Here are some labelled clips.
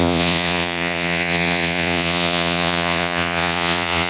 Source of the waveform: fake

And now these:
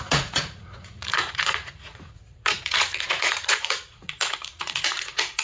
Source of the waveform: fake